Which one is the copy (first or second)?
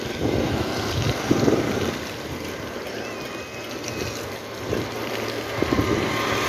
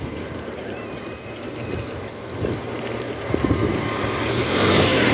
second